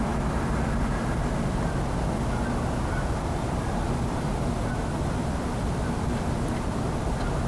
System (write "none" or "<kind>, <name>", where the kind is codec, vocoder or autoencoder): none